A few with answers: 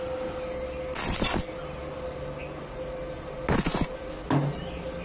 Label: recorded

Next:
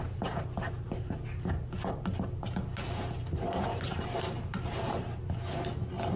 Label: recorded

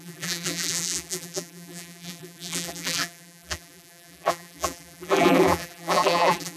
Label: remade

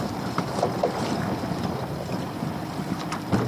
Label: remade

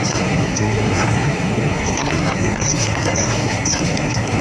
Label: remade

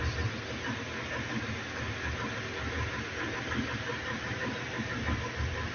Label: recorded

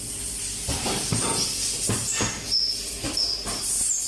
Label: recorded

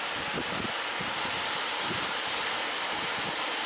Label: recorded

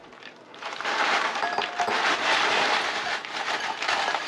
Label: remade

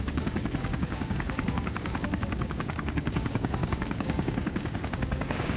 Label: remade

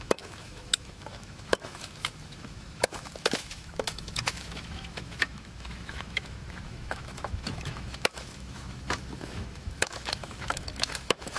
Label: remade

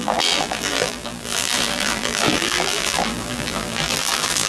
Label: remade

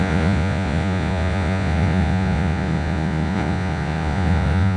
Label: remade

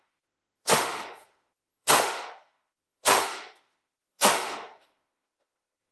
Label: remade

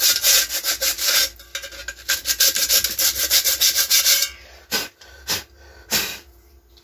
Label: recorded